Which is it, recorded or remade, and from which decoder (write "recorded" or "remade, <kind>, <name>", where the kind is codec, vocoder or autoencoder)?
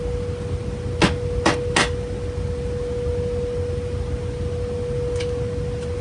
recorded